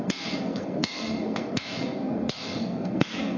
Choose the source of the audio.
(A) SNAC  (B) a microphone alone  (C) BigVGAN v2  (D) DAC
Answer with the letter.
A